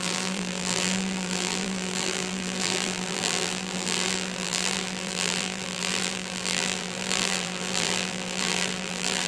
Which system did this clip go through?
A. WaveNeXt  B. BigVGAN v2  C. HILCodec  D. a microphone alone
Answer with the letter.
B